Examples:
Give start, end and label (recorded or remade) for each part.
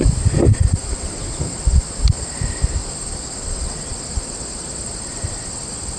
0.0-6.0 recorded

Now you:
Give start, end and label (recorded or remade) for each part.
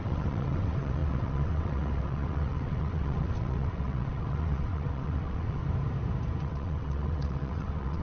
0.0-5.6 remade; 5.6-6.4 recorded; 6.4-8.0 remade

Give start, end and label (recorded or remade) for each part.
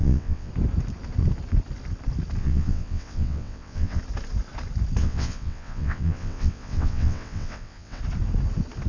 0.0-0.5 remade; 0.5-2.4 recorded; 2.4-4.0 remade; 4.0-5.0 recorded; 5.0-8.0 remade; 8.0-8.9 recorded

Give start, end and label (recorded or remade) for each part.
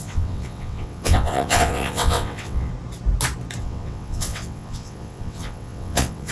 0.0-2.7 remade; 2.7-3.6 recorded; 3.6-6.3 remade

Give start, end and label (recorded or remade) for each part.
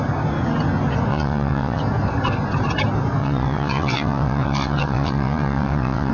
0.0-1.1 recorded; 1.1-1.8 remade; 1.8-3.2 recorded; 3.2-6.1 remade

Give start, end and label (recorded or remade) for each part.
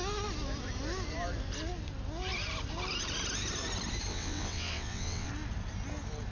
0.0-4.1 recorded; 4.1-5.3 remade; 5.3-6.3 recorded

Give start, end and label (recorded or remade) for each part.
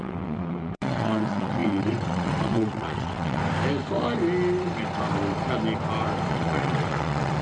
0.0-3.4 remade; 3.4-6.3 recorded; 6.3-7.4 remade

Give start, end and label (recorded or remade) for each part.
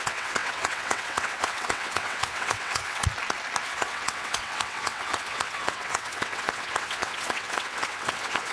0.0-3.0 remade; 3.0-3.6 recorded; 3.6-8.5 remade